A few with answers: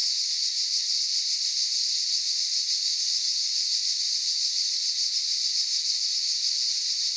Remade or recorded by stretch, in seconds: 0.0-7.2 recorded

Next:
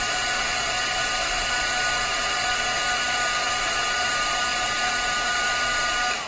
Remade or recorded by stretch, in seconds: 0.0-6.3 recorded

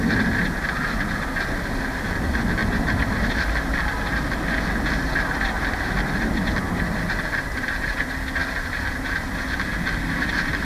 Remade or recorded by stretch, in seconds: 0.0-10.6 recorded

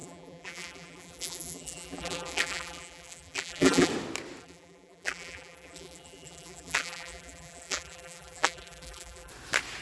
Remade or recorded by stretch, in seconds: 0.0-3.9 remade; 3.9-4.4 recorded; 4.4-9.3 remade; 9.3-9.8 recorded